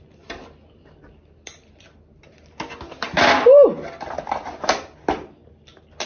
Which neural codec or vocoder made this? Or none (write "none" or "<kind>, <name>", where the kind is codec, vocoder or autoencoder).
none